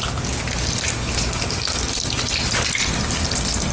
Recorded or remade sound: recorded